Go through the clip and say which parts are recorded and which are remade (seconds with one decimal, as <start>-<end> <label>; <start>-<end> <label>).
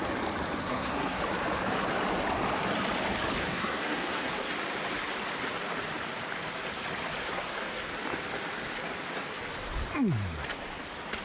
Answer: 0.0-0.6 recorded; 0.6-1.2 remade; 1.2-3.4 recorded; 3.4-4.5 remade; 4.5-7.2 recorded; 7.2-7.9 remade; 7.9-11.2 recorded